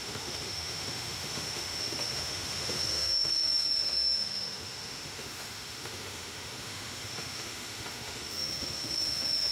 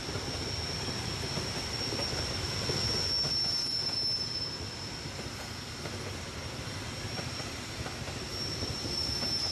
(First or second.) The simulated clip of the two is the first